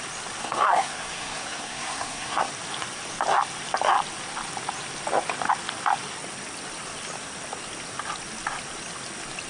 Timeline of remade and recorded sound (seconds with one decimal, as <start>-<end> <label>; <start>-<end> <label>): 0.0-0.4 recorded; 0.4-2.5 remade; 2.5-9.5 recorded